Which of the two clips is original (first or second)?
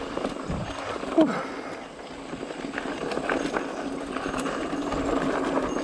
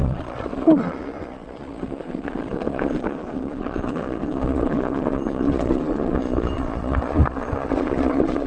first